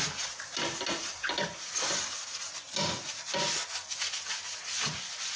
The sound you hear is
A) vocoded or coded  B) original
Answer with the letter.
B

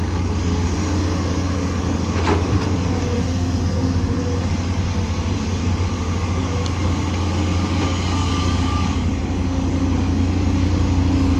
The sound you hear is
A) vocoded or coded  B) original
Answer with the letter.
A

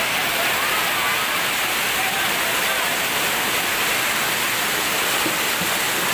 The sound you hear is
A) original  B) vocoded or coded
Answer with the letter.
A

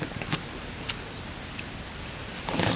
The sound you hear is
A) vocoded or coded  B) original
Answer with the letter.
B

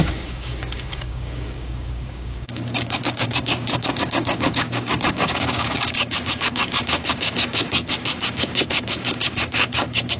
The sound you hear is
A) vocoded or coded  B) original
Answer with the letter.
A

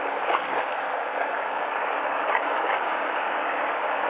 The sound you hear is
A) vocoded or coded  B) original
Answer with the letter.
A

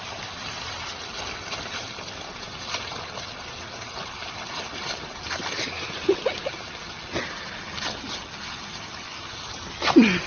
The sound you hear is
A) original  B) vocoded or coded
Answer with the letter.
A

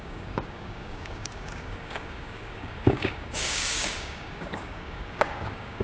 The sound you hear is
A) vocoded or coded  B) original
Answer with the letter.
A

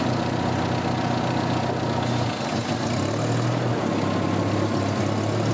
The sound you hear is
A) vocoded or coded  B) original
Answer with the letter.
B